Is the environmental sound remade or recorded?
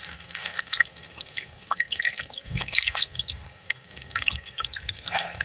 remade